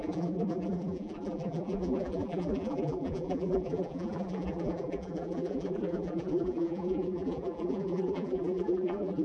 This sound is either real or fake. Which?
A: fake